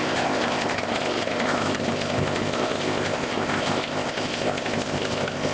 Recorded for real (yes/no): no